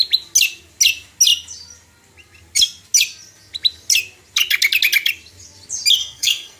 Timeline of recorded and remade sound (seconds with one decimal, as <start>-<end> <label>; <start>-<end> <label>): 0.0-6.0 recorded; 6.0-6.6 remade